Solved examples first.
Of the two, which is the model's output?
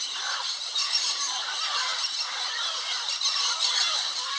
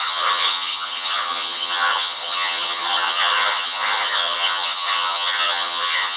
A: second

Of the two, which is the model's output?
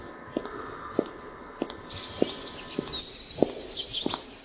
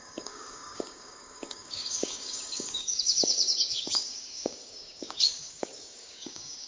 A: second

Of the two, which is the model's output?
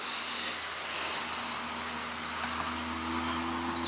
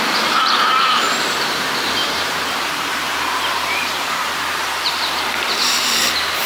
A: second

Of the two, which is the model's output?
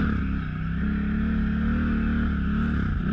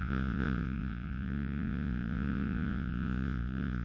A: second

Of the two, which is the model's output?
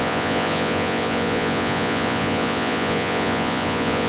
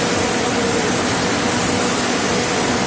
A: first